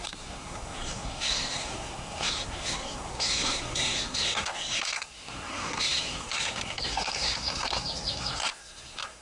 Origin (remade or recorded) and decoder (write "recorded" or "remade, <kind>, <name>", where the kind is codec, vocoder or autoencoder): remade, codec, SNAC